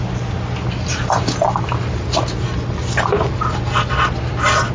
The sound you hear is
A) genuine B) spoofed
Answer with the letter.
A